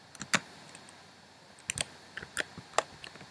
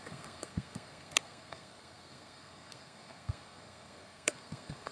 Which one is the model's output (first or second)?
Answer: second